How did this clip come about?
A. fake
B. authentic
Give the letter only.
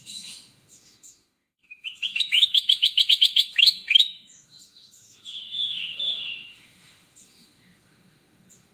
A